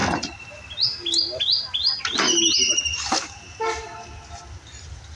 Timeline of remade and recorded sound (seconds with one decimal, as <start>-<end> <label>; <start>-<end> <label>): 0.0-5.2 recorded